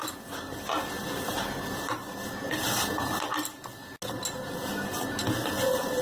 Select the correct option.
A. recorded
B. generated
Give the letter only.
A